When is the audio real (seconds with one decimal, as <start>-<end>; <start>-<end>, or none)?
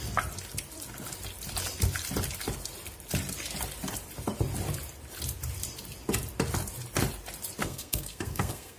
0.0-7.6